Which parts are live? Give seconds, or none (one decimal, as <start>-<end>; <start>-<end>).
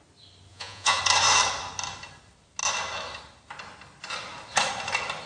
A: 0.0-0.5; 1.0-5.3